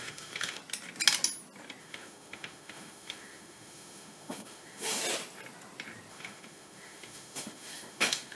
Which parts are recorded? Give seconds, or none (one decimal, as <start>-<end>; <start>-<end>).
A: 0.6-1.8; 5.0-6.1